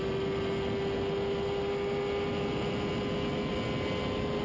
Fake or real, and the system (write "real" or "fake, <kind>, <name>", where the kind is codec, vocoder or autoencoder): real